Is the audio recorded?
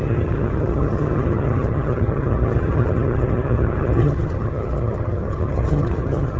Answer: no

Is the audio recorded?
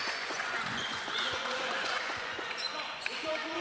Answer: no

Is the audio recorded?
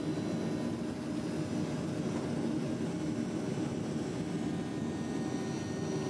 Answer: yes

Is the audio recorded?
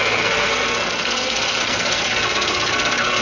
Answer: no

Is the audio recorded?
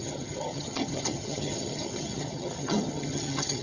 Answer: no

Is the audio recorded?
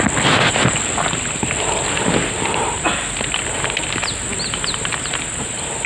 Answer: yes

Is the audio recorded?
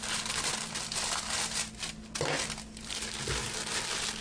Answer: yes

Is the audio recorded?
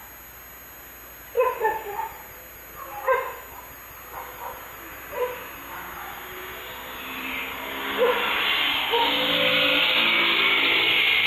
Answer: yes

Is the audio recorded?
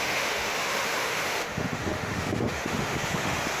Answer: no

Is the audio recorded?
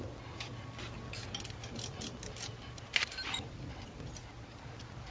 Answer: yes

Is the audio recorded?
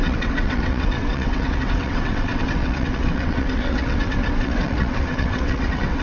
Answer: no